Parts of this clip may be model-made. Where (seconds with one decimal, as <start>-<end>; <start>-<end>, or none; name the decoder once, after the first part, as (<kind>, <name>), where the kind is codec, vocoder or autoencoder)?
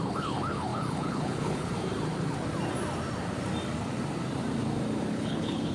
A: 0.0-1.7 (codec, HILCodec); 5.1-5.7